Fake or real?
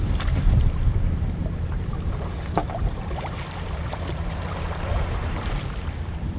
fake